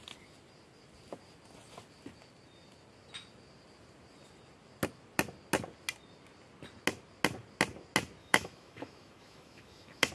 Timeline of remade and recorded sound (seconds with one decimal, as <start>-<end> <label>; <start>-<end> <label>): 0.0-8.2 recorded; 8.2-10.1 remade